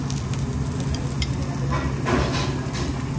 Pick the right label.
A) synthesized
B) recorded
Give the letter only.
B